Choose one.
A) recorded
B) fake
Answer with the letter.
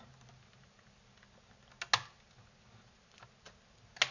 A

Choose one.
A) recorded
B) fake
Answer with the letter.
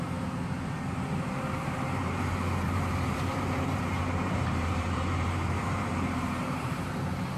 B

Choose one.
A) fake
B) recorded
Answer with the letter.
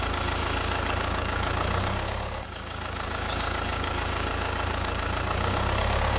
A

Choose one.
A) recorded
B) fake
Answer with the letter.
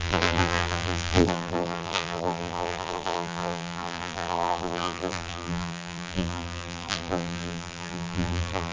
B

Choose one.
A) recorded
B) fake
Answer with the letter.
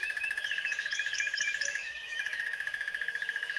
B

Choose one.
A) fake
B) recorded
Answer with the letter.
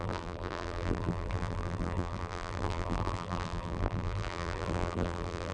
A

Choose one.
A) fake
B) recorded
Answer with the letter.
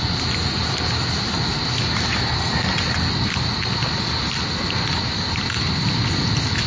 B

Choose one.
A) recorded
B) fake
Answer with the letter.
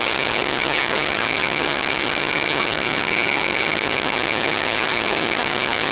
B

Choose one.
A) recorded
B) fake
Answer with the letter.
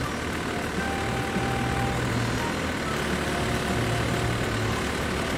A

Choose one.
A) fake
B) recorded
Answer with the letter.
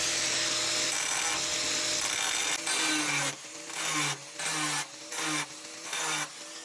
B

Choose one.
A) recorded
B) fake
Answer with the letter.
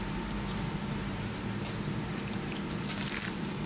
B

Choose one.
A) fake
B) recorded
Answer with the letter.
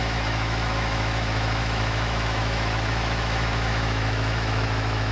A